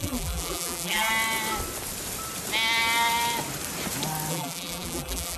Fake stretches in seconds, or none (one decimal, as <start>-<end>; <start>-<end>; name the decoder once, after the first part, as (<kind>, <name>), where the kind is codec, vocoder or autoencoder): 0.0-1.1 (vocoder, BigVGAN v2); 4.3-5.4